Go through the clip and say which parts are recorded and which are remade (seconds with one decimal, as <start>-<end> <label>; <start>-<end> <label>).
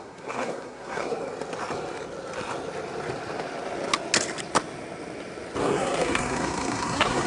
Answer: 0.0-1.2 remade; 1.2-5.6 recorded; 5.6-7.3 remade